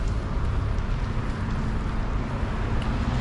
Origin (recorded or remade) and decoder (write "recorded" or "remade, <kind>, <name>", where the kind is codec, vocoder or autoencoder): recorded